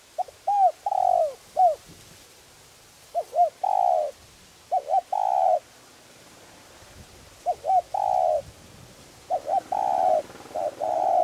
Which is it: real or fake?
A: real